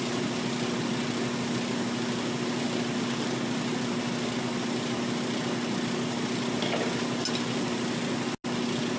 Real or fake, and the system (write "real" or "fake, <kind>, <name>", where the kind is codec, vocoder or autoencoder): real